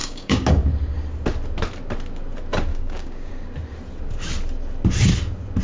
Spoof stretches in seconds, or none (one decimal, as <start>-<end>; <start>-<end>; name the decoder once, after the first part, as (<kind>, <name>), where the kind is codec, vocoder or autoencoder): 0.0-0.5 (codec, DAC); 2.7-3.3